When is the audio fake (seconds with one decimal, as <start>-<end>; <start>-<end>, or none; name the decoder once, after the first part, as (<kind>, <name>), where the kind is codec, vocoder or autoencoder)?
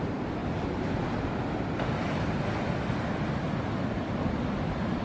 none